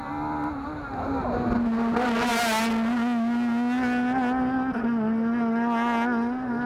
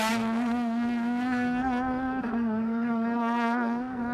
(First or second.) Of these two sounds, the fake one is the second